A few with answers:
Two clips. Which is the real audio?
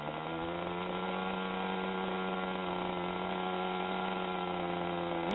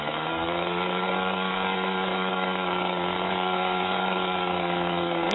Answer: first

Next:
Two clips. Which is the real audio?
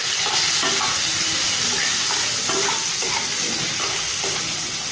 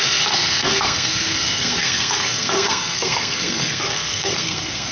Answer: first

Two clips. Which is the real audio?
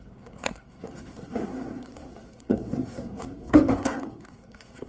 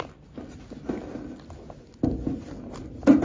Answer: second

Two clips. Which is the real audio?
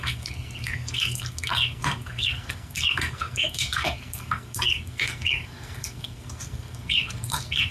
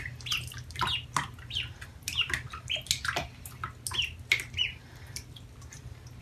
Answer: second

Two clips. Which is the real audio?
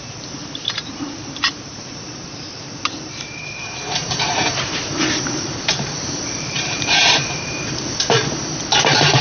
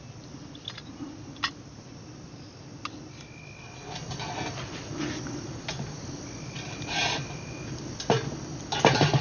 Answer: second